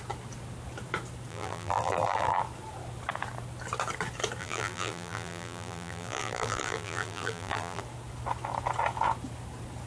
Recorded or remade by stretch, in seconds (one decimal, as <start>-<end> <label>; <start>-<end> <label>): 0.0-1.3 recorded; 1.3-2.4 remade; 2.4-4.4 recorded; 4.4-7.8 remade; 7.8-9.9 recorded